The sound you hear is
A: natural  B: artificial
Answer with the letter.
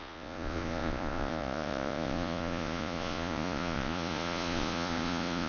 B